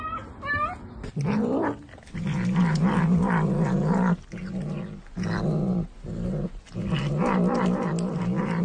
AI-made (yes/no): no